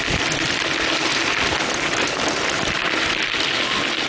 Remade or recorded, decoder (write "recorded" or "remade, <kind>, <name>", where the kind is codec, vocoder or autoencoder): recorded